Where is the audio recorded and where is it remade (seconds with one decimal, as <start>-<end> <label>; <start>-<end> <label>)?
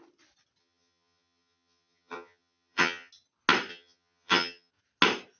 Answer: 0.0-0.6 recorded; 0.6-3.1 remade; 3.1-3.7 recorded; 3.7-4.7 remade; 4.7-5.4 recorded